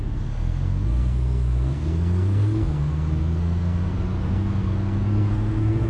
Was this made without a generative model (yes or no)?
no